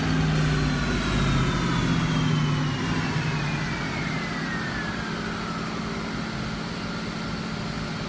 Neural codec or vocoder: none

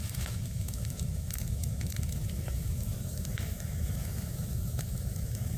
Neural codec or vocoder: autoencoder, DAC-VAE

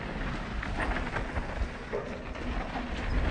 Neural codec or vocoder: none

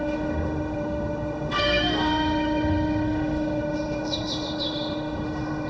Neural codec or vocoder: autoencoder, DAC-VAE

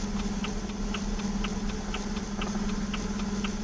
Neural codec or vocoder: none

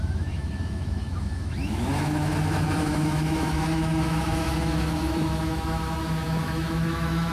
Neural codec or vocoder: autoencoder, DAC-VAE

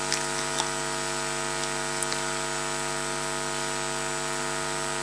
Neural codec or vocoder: none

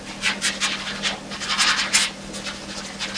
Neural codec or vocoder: none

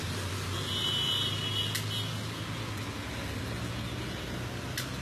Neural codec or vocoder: none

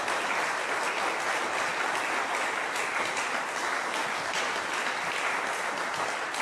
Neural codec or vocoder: none